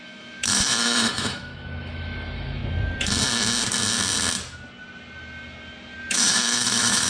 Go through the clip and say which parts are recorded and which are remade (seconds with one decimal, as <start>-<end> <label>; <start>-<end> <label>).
0.0-2.6 remade; 2.6-6.1 recorded; 6.1-7.1 remade

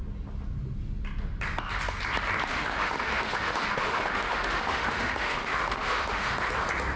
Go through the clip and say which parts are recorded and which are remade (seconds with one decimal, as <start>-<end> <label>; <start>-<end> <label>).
0.0-2.5 recorded; 2.5-6.5 remade; 6.5-7.0 recorded